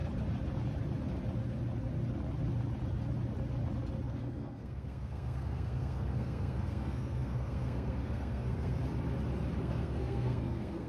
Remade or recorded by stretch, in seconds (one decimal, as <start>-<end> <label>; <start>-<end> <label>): 0.0-4.1 recorded; 4.1-8.8 remade; 8.8-9.6 recorded; 9.6-10.9 remade